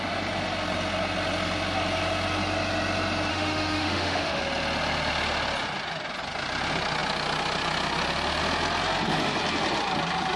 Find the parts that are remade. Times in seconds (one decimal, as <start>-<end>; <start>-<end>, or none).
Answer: 3.3-4.4